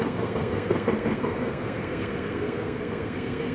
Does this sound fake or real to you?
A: fake